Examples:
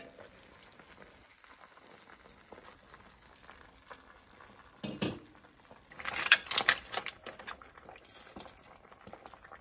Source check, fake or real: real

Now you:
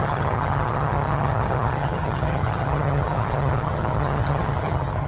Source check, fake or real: fake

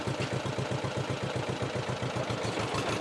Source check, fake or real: real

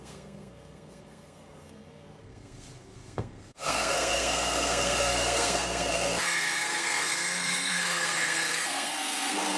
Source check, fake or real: fake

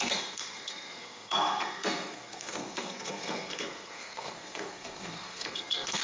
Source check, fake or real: fake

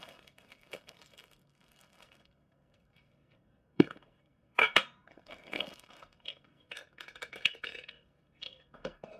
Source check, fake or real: fake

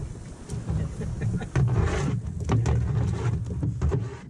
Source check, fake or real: real